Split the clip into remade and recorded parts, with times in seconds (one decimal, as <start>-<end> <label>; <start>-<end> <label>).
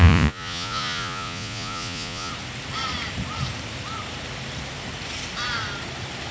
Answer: 0.0-2.3 remade; 2.3-6.3 recorded